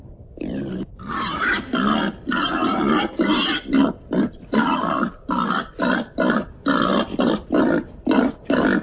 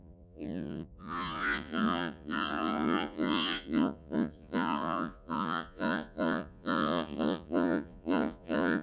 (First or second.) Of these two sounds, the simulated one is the second